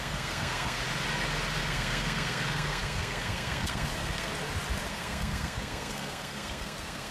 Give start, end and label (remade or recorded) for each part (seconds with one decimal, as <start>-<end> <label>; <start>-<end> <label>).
0.0-0.8 remade; 0.8-1.6 recorded; 1.6-4.3 remade; 4.3-4.9 recorded; 4.9-7.1 remade